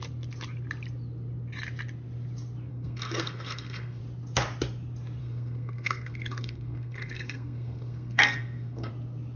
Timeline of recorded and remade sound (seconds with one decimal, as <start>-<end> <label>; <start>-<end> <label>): 0.0-2.7 recorded; 2.7-4.0 remade; 4.0-5.2 recorded; 5.2-8.9 remade; 8.9-9.4 recorded